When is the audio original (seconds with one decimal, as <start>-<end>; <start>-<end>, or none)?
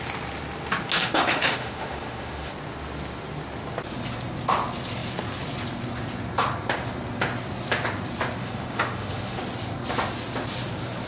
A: 0.0-1.0; 2.5-8.4; 9.4-11.1